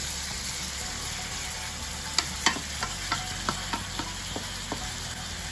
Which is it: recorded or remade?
recorded